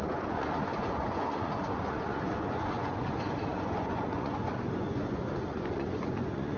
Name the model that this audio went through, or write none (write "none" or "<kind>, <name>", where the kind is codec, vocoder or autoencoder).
vocoder, Vocos